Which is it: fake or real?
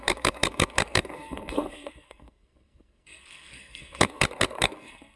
fake